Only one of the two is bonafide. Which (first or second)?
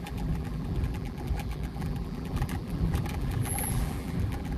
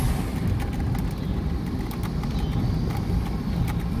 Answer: second